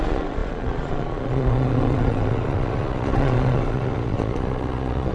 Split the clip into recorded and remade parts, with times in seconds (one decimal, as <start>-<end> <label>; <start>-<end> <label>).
0.0-5.1 remade